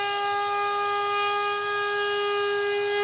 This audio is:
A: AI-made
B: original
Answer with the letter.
B